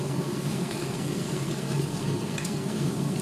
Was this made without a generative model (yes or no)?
no